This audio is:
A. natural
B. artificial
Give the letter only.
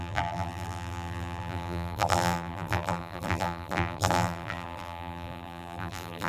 B